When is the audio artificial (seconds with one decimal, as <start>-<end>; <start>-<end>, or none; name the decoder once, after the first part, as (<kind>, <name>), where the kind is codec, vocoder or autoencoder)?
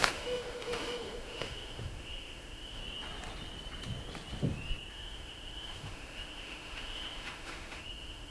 0.0-2.8 (autoencoder, DAC-VAE); 4.9-8.3